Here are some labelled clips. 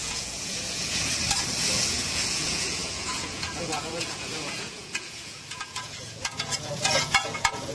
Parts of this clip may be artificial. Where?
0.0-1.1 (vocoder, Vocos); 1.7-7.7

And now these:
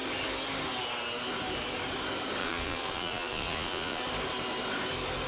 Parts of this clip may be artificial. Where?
2.4-4.0 (vocoder, Vocos)

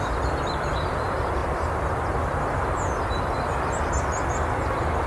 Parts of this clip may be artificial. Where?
none

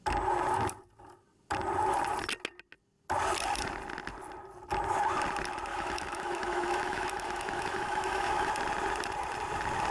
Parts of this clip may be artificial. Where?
5.7-8.5 (autoencoder, DAC-VAE)

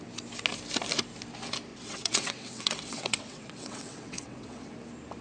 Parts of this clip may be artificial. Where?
1.7-4.7 (vocoder, WaveNeXt)

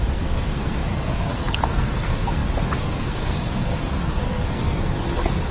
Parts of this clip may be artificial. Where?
0.0-5.5 (codec, SNAC)